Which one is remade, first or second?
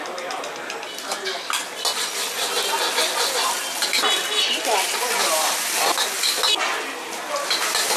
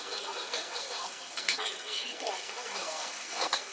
second